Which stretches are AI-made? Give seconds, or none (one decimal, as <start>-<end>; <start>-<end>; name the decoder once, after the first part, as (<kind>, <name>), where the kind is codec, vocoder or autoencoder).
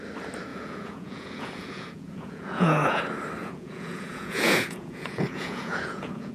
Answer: 0.5-3.0 (vocoder, Vocos); 3.4-6.3